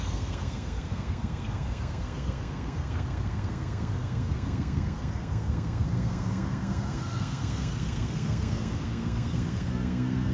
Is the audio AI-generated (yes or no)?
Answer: yes